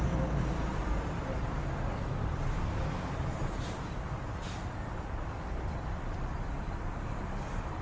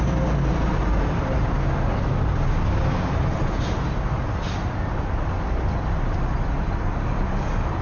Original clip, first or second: second